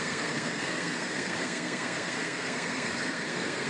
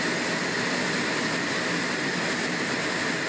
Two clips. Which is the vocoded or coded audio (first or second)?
first